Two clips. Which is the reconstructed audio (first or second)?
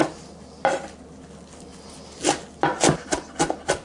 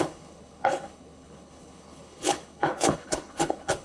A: second